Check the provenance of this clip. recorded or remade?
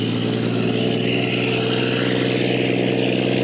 recorded